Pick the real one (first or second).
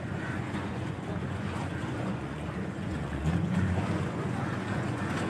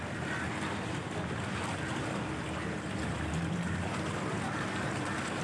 second